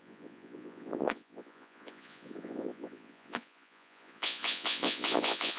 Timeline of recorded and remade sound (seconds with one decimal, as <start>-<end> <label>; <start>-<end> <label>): 0.0-5.6 remade